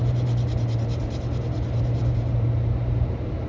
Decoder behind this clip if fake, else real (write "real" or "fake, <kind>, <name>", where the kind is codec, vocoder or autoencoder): fake, vocoder, BigVGAN v2